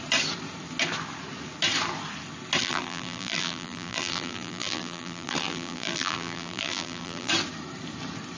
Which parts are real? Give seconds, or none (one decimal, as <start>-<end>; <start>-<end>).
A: 0.0-2.6; 7.3-8.4